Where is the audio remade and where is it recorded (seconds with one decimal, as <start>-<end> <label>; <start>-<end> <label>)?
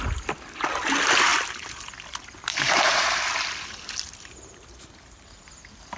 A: 0.0-6.0 recorded